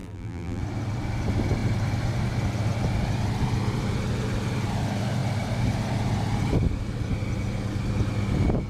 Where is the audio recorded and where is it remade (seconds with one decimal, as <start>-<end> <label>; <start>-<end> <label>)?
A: 0.0-0.6 remade; 0.6-8.7 recorded